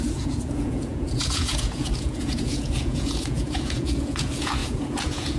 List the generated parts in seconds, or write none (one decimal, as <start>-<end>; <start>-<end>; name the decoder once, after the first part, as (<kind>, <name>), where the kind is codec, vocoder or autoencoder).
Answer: 0.0-5.4 (vocoder, Vocos)